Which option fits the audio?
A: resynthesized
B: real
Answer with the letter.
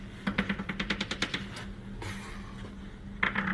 B